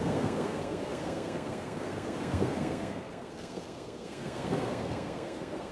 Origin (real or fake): fake